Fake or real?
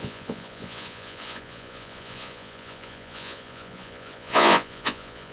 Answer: fake